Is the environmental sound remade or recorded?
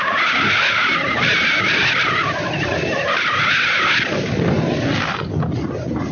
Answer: recorded